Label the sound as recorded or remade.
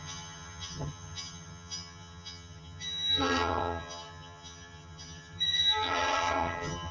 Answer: remade